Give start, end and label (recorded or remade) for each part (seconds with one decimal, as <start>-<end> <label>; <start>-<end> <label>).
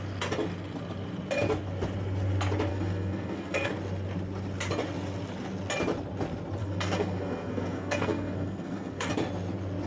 0.0-2.7 recorded; 2.7-3.7 remade; 3.7-6.6 recorded; 6.6-9.1 remade; 9.1-9.9 recorded